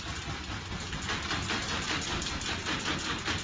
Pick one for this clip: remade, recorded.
recorded